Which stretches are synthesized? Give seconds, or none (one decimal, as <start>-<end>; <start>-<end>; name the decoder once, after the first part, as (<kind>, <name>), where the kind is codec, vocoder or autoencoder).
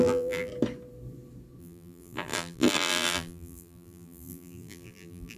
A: 0.0-0.5 (vocoder, BigVGAN v2); 1.6-5.4